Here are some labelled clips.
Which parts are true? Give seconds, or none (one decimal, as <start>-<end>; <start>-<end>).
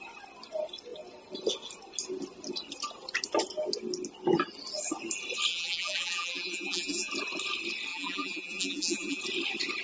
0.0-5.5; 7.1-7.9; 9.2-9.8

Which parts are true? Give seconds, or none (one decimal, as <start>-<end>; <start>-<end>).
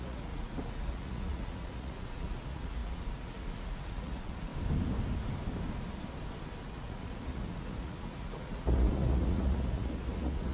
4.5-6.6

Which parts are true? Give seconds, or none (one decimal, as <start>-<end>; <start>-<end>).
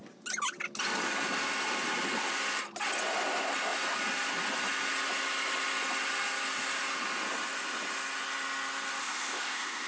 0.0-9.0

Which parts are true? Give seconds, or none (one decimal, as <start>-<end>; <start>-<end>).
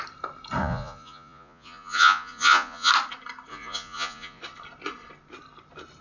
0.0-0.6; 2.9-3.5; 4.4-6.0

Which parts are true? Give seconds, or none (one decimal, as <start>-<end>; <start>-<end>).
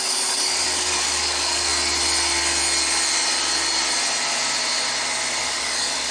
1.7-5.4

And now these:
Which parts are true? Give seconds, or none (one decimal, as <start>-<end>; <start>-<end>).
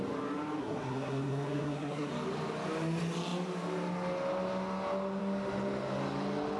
0.0-0.6; 2.1-6.6